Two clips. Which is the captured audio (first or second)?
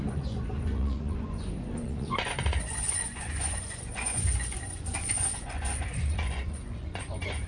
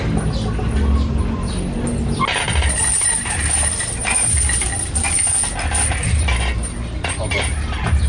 second